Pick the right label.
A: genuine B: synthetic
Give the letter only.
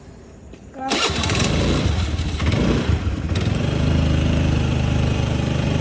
B